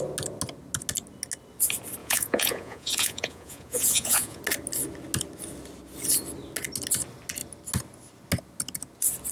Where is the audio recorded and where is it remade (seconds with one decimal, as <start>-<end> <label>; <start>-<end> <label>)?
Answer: 0.0-2.0 recorded; 2.0-4.4 remade; 4.4-9.3 recorded